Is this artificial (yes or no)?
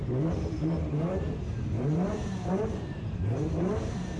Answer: yes